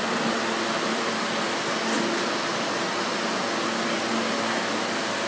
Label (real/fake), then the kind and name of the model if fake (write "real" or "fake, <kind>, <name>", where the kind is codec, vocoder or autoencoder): real